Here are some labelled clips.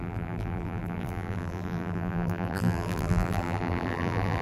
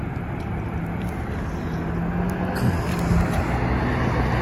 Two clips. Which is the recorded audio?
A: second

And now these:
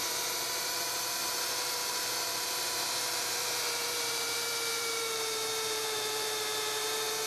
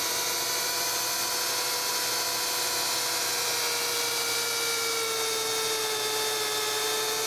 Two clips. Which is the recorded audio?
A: second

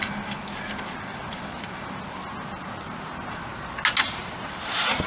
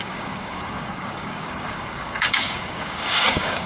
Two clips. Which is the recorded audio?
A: first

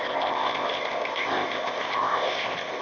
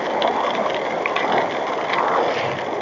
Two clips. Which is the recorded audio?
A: second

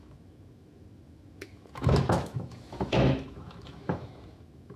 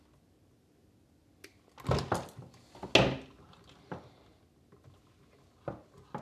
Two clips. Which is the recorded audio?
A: second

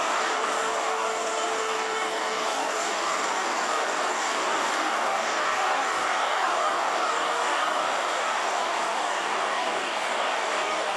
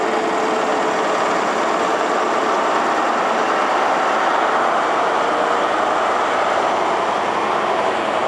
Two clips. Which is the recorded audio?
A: second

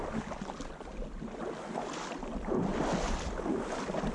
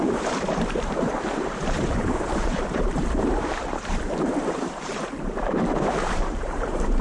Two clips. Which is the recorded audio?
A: first